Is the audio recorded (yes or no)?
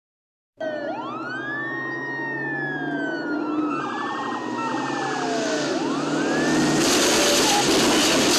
yes